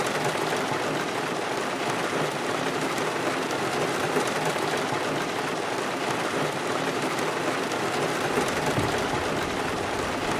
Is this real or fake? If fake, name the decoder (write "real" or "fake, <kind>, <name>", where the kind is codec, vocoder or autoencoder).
fake, vocoder, BigVGAN v2